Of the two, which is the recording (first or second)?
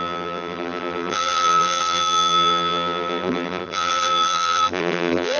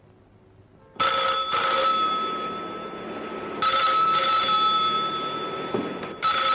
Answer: second